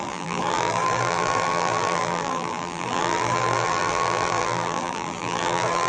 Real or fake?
fake